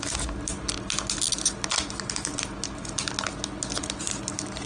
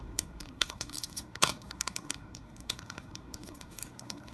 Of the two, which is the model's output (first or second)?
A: second